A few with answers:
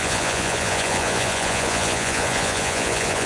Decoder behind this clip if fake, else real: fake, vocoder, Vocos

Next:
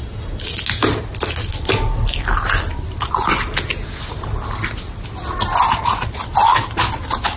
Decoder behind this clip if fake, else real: real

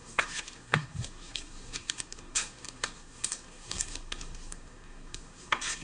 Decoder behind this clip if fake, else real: fake, codec, SNAC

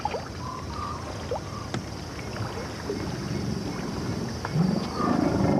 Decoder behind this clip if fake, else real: real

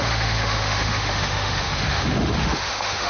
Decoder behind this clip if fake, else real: fake, autoencoder, DAC-VAE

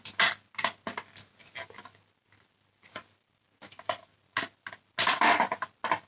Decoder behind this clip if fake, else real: real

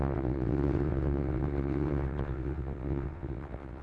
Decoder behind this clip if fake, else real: fake, vocoder, WaveNeXt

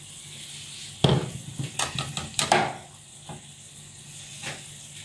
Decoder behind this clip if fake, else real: real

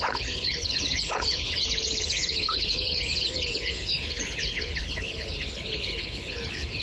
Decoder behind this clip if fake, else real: fake, codec, HILCodec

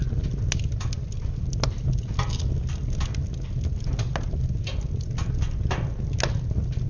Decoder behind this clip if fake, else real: real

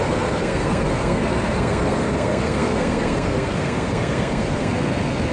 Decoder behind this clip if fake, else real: fake, codec, SNAC